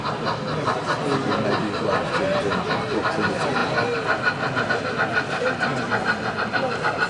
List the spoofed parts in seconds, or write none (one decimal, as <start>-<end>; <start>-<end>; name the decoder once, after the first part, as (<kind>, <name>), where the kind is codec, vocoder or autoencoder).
none